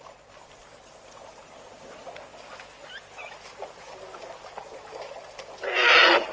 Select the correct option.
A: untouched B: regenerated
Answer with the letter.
A